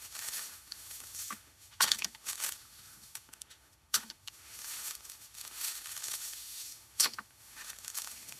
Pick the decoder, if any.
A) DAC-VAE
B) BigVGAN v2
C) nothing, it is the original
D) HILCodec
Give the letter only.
A